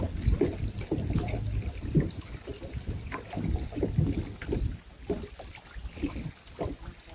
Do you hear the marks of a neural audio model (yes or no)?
no